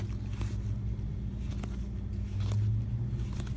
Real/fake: real